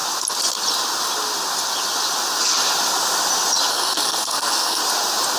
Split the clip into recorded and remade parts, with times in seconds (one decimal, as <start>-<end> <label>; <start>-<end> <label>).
0.0-3.7 recorded; 3.7-4.8 remade; 4.8-5.4 recorded